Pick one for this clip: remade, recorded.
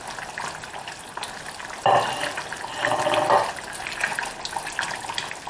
recorded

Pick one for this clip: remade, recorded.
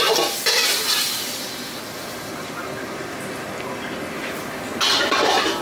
recorded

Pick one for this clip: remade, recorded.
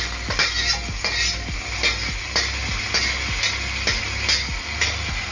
recorded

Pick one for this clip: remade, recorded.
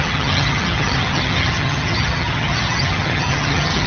remade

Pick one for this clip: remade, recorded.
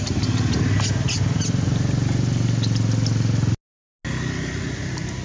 recorded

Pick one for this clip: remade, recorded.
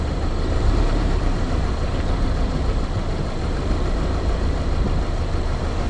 remade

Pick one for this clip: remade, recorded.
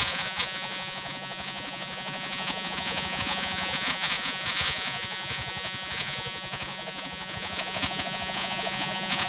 remade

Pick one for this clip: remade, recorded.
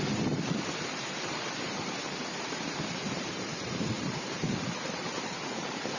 remade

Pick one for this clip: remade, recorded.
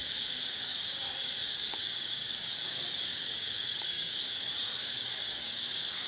remade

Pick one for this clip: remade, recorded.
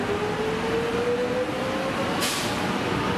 recorded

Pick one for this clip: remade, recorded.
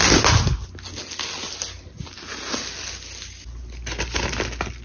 recorded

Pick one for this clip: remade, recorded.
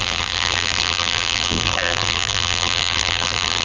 remade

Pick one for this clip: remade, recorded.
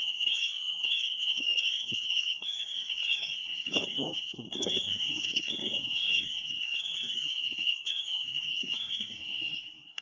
remade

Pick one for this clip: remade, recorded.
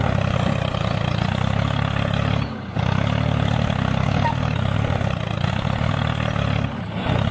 recorded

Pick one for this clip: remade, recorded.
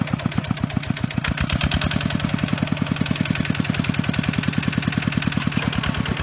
recorded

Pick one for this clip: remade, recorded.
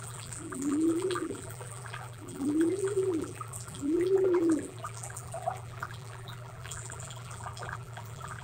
remade